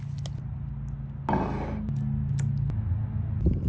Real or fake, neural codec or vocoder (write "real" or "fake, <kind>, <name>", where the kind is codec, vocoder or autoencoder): real